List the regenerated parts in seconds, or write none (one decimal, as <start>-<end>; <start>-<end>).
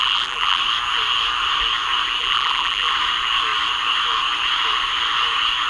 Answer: 0.0-0.6; 2.2-2.9